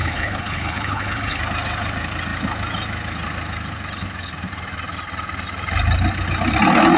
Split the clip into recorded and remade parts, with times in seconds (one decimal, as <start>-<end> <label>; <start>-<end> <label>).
0.0-1.4 remade; 1.4-7.0 recorded